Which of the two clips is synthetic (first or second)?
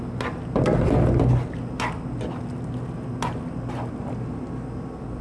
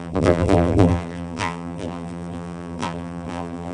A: second